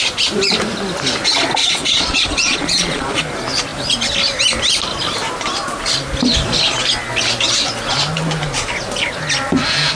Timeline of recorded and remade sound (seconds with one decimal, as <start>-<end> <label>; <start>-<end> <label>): 0.0-1.6 recorded; 1.6-3.2 remade; 3.2-10.0 recorded